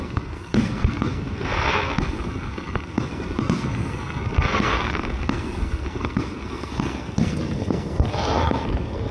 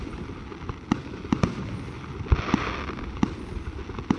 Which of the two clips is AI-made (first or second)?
first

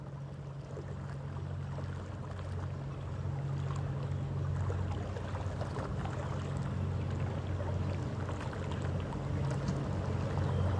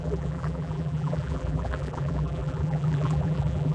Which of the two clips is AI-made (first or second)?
second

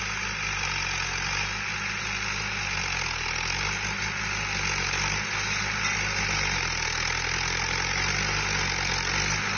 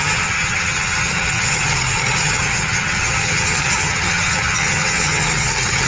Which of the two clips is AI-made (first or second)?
second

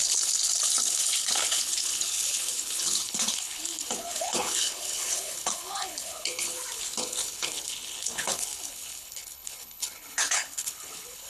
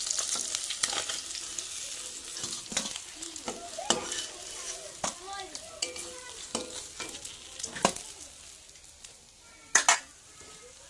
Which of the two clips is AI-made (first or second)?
first